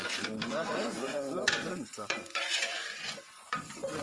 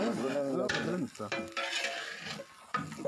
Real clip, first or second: second